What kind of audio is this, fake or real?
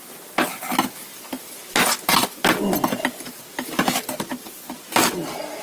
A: real